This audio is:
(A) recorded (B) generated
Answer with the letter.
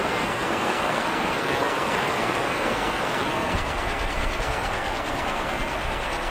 B